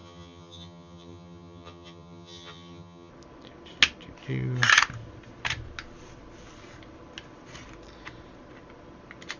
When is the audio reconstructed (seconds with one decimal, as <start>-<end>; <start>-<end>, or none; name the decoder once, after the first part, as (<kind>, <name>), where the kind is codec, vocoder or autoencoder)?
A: 0.0-3.1 (vocoder, HiFi-GAN)